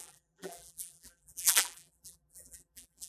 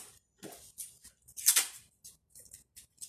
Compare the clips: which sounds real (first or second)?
second